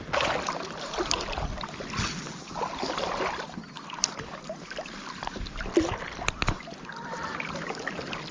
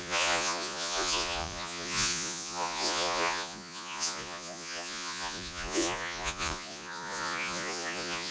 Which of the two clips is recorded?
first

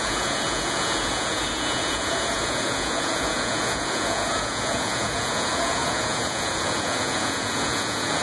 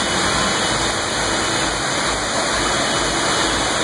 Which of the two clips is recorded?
second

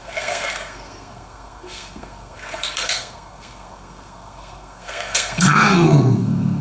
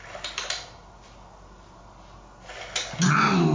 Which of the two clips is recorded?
second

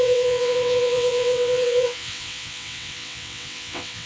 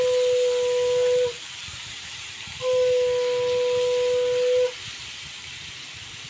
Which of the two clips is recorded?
second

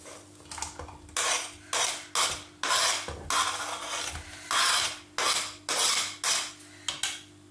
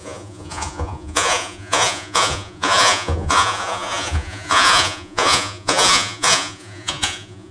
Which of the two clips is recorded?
first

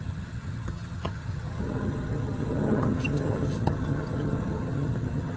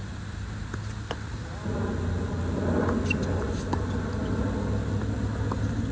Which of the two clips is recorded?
second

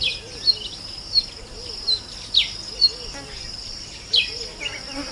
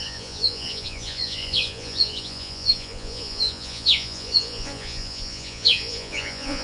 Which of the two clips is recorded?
first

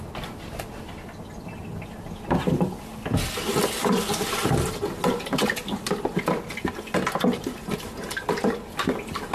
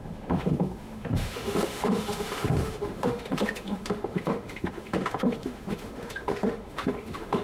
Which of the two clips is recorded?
first